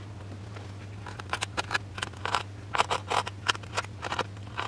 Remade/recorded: recorded